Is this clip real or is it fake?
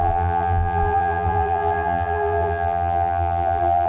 fake